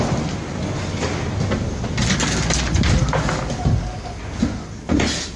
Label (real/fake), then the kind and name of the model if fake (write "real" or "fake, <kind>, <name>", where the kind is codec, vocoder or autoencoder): real